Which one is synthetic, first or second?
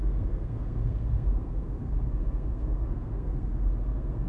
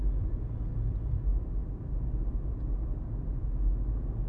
first